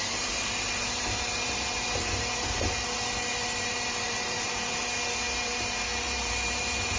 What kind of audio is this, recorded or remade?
remade